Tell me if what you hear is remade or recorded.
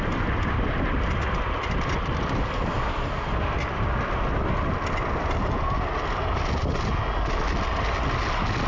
recorded